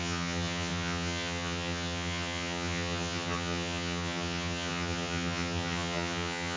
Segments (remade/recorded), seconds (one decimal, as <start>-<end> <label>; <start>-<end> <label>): 0.0-6.6 remade